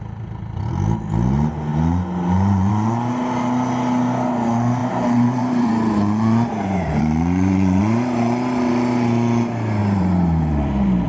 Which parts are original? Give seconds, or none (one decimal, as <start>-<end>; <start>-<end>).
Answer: 0.0-4.8; 5.7-6.5; 7.8-9.8